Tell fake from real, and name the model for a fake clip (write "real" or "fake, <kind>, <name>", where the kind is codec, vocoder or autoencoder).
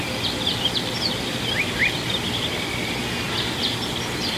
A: real